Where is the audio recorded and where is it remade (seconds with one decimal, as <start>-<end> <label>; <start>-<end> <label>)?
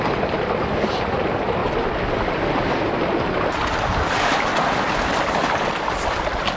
0.0-6.6 recorded